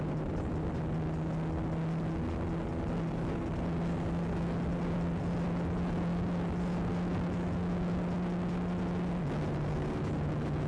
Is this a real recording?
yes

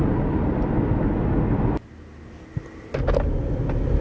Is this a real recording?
yes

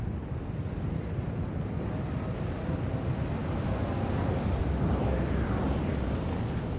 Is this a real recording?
yes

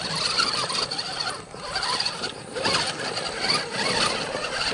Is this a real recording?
yes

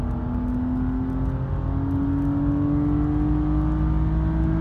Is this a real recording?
yes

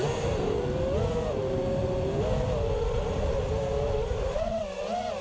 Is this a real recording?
yes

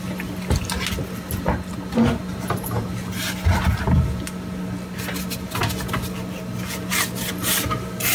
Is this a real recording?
yes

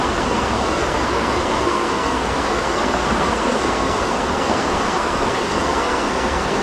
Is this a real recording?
no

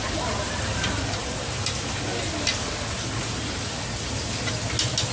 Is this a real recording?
yes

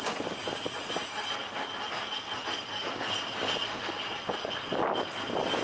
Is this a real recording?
yes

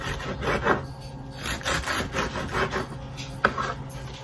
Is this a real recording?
yes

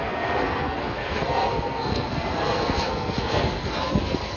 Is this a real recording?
no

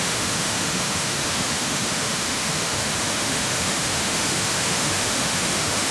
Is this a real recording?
no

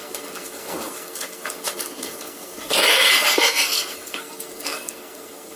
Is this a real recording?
no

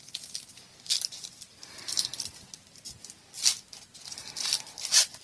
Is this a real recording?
yes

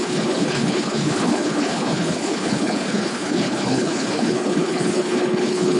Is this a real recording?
no